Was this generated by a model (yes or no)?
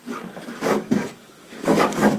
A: yes